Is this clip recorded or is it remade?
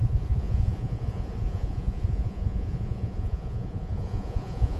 remade